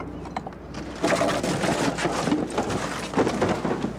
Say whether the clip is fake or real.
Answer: real